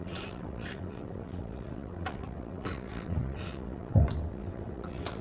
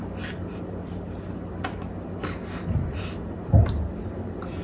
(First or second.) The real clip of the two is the second